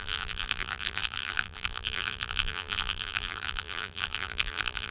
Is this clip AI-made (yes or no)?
yes